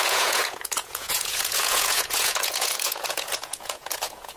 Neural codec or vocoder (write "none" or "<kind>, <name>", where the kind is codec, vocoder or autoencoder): vocoder, Vocos